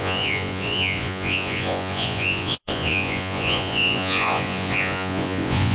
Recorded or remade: remade